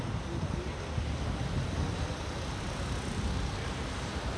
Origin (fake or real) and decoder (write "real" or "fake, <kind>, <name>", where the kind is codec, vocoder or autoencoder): real